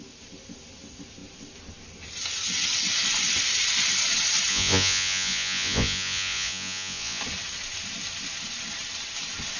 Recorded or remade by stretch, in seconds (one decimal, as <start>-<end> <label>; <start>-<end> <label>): 0.0-4.5 recorded; 4.5-7.2 remade; 7.2-9.6 recorded

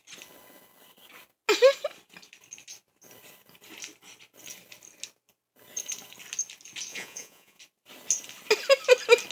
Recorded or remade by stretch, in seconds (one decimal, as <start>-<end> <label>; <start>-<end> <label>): 0.0-6.9 recorded; 6.9-7.6 remade; 7.6-9.3 recorded